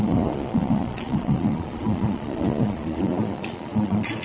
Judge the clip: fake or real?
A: fake